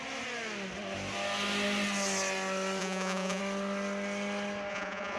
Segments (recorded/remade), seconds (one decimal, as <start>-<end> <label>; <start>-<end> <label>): 0.0-2.8 recorded; 2.8-3.4 remade; 3.4-4.7 recorded; 4.7-5.2 remade